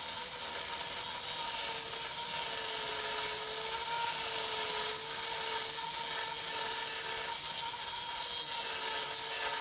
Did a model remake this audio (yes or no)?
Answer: no